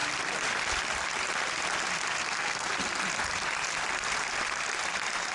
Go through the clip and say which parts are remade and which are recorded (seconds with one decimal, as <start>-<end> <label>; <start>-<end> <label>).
0.0-2.2 recorded; 2.2-2.7 remade; 2.7-5.3 recorded